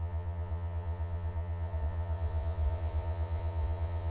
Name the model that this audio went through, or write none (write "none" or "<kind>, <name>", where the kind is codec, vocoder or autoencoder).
vocoder, Vocos